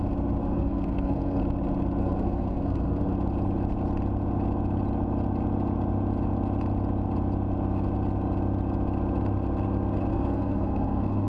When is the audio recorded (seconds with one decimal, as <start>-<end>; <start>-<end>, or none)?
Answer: 0.0-0.4; 1.4-2.0; 3.1-10.1